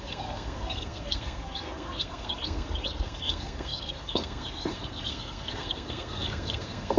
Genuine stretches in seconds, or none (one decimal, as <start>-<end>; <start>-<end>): none